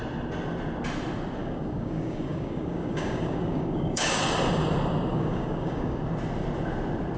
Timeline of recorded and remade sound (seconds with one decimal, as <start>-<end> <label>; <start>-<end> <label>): 0.0-1.4 recorded; 1.4-4.2 remade; 4.2-5.1 recorded; 5.1-6.0 remade; 6.0-7.2 recorded